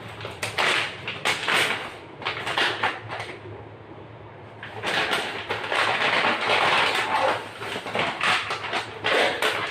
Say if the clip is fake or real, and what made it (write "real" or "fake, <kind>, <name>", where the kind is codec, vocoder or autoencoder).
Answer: real